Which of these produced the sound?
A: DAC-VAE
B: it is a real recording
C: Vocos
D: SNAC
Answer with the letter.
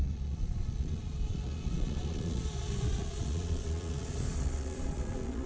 C